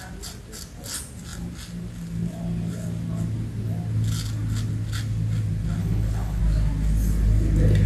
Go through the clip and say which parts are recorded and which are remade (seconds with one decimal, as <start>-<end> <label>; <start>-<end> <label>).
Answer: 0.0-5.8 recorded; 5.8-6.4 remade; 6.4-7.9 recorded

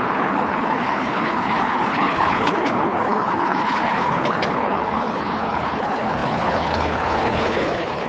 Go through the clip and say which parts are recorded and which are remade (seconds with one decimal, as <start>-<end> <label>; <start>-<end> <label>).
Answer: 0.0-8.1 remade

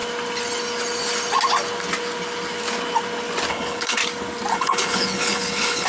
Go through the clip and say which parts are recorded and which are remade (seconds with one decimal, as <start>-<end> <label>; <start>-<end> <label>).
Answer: 0.0-3.5 recorded; 3.5-4.0 remade; 4.0-4.5 recorded; 4.5-5.9 remade

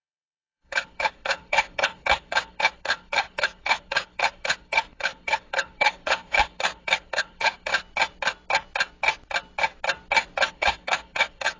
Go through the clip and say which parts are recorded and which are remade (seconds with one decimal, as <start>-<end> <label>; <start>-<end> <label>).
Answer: 0.0-7.7 remade; 7.7-10.5 recorded; 10.5-11.6 remade

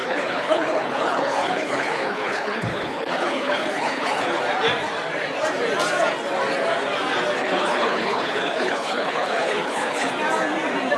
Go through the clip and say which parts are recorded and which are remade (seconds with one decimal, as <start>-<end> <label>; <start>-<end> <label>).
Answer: 0.0-4.4 remade; 4.4-7.4 recorded; 7.4-10.1 remade; 10.1-11.0 recorded